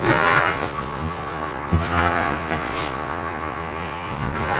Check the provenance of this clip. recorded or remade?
remade